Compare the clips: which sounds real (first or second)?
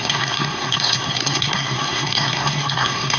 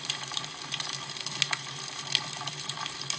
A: second